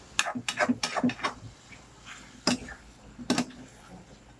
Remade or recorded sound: recorded